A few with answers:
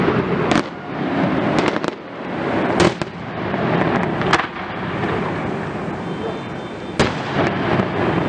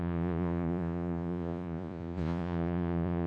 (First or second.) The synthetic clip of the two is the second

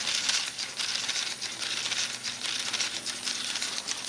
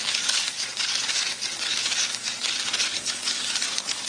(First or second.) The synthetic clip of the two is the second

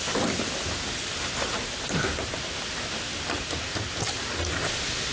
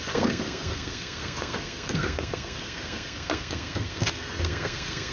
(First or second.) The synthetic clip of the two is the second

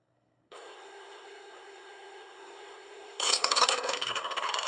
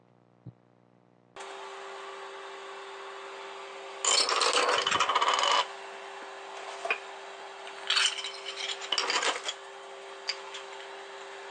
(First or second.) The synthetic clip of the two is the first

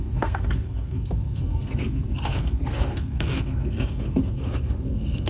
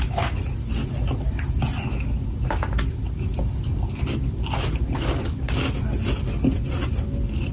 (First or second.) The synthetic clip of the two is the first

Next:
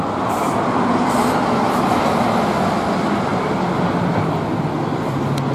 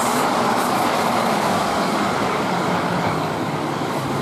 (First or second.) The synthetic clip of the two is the second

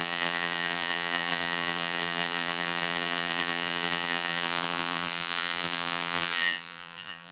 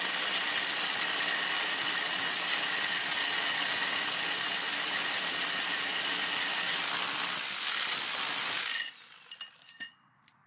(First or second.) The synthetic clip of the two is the first